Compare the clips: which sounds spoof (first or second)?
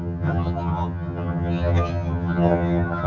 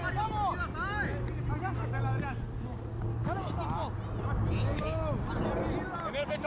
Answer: first